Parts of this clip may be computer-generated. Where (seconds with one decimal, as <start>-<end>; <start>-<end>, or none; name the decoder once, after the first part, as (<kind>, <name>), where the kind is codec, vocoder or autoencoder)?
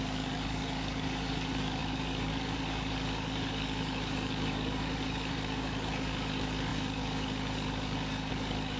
0.0-8.8 (codec, DAC)